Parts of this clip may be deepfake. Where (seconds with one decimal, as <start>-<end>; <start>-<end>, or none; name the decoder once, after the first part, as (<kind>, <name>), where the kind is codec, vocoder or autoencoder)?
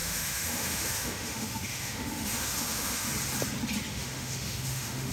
0.0-3.1 (autoencoder, DAC-VAE); 3.9-5.1